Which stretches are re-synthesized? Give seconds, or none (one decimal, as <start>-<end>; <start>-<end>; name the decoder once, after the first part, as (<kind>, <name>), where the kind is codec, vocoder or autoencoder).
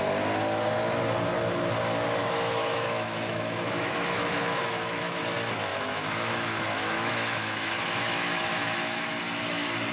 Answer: 2.2-5.2 (autoencoder, DAC-VAE); 5.7-9.2